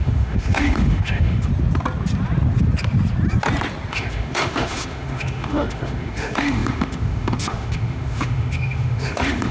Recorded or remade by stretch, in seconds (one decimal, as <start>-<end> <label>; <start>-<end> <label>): 0.0-1.5 remade; 1.5-3.9 recorded; 3.9-9.5 remade